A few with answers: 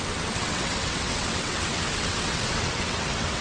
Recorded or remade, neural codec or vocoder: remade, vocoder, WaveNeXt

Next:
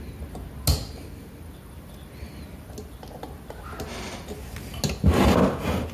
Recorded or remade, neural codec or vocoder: recorded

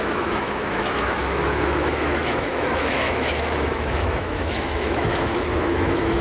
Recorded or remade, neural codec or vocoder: remade, autoencoder, DAC-VAE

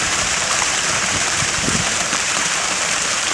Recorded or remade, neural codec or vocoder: remade, vocoder, BigVGAN v2